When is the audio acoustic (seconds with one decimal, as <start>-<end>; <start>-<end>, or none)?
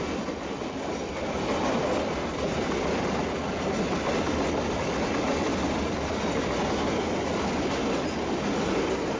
0.0-9.2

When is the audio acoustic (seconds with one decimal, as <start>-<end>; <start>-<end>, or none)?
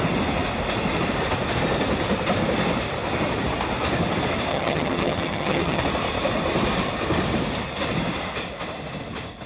0.0-4.5; 5.8-9.5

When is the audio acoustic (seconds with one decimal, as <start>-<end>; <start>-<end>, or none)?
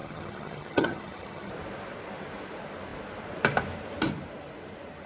1.5-5.1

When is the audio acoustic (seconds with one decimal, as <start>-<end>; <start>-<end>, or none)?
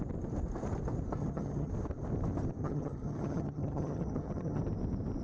0.0-1.2; 1.7-2.6; 4.6-5.2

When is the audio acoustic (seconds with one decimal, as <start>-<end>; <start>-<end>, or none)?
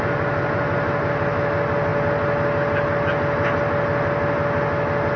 0.0-5.2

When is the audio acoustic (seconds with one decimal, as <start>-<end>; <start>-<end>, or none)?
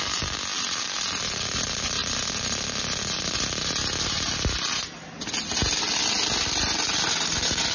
0.0-7.7